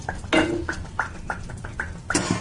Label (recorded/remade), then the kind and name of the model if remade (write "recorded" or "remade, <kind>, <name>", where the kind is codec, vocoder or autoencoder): recorded